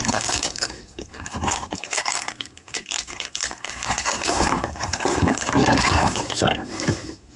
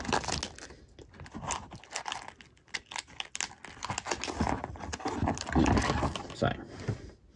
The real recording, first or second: second